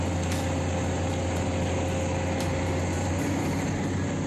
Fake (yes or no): no